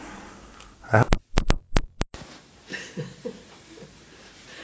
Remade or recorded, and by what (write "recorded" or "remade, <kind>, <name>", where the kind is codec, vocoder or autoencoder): recorded